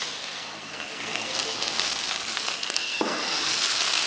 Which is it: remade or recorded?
remade